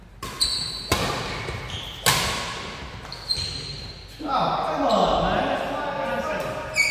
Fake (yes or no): no